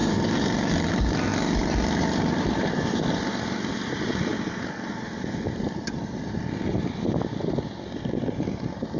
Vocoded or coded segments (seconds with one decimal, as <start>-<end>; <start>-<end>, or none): 0.0-9.0